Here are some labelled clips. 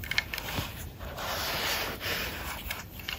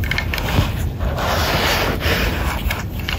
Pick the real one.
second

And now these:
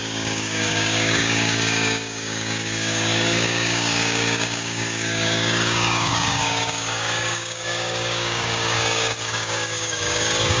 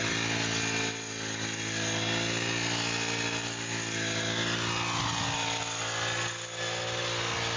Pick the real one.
second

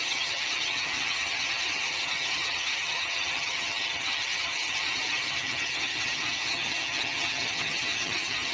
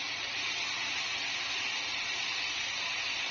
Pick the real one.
second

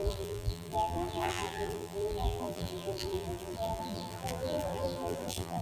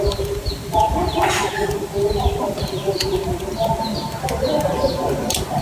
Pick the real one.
second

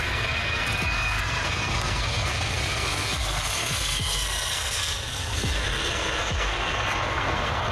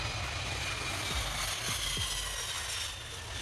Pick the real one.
second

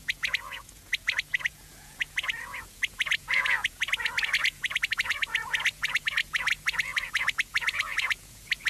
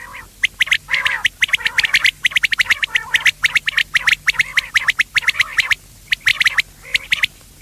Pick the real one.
second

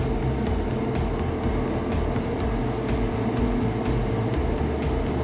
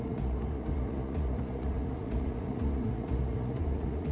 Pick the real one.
first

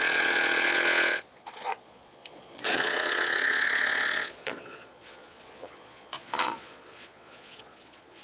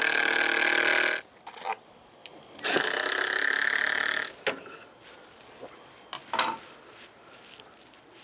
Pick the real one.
second